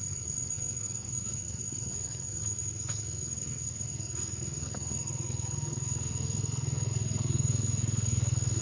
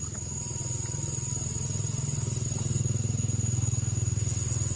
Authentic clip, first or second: second